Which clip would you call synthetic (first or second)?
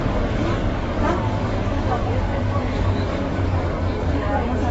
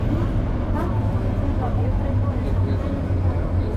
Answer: first